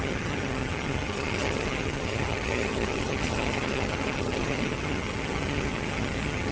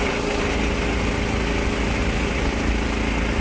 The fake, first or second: first